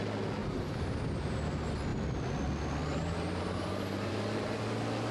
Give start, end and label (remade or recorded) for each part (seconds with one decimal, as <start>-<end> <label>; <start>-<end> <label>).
0.0-0.4 recorded; 0.4-1.5 remade; 1.5-2.9 recorded; 2.9-4.1 remade; 4.1-5.1 recorded